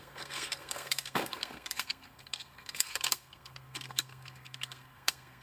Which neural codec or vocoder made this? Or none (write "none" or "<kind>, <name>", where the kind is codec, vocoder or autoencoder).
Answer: codec, SNAC